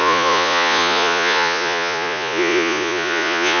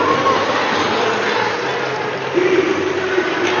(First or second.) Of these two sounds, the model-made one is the first